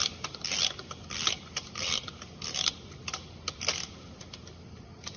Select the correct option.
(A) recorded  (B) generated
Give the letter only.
A